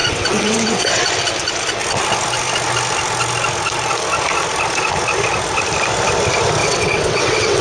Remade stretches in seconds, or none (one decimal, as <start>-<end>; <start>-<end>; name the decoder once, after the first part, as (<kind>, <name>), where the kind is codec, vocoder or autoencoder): 0.0-1.0 (vocoder, WaveNeXt); 6.6-7.6